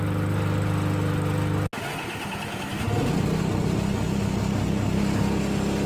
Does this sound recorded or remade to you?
recorded